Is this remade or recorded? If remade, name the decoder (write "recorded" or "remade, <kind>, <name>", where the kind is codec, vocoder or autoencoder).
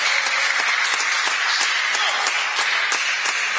recorded